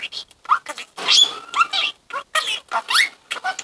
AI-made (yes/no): no